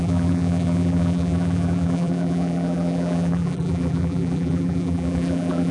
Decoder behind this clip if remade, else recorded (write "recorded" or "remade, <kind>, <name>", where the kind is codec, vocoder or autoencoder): remade, vocoder, BigVGAN v2